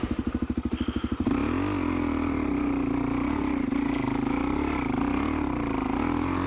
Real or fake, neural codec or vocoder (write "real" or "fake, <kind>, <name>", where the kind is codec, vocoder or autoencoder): real